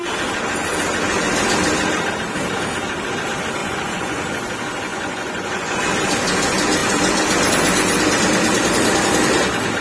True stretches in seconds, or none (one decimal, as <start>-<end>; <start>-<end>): 0.0-3.6; 4.2-4.9; 5.8-9.8